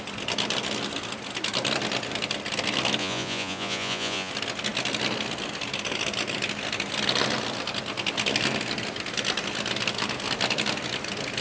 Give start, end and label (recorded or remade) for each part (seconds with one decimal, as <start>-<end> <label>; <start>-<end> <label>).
0.0-3.0 recorded; 3.0-4.3 remade; 4.3-11.4 recorded